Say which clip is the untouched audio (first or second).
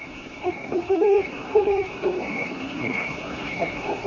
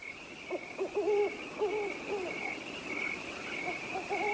second